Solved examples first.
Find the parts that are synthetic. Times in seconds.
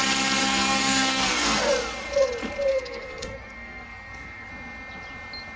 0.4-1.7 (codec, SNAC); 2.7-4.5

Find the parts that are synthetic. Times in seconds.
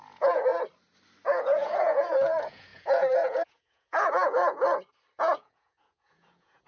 0.0-0.5 (vocoder, Vocos); 1.4-4.6; 5.2-6.7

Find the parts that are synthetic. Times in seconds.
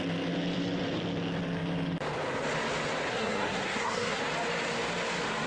3.1-4.2 (codec, SNAC)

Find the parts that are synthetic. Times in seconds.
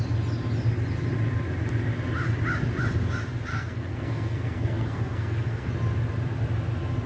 3.5-5.7 (codec, SNAC)